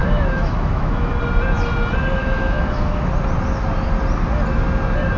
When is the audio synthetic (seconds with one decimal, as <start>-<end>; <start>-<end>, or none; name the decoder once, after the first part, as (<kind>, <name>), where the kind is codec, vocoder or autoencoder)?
0.0-1.1 (autoencoder, DAC-VAE); 2.2-3.1